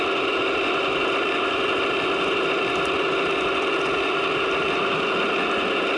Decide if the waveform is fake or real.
real